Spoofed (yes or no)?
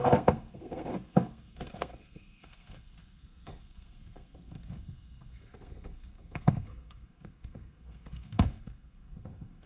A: yes